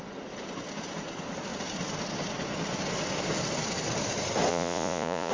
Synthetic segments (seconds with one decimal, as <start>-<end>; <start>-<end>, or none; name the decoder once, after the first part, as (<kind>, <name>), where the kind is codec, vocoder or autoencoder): 4.5-5.3 (vocoder, Vocos)